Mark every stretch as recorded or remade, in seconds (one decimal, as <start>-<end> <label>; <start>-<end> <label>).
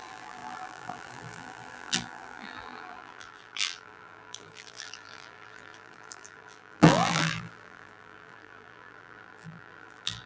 0.0-10.3 remade